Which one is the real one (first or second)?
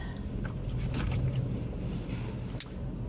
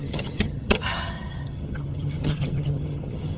first